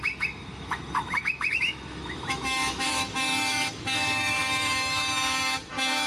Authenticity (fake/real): fake